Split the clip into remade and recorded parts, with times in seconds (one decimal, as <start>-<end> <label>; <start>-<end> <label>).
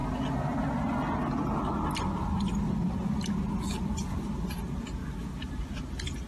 0.0-6.3 recorded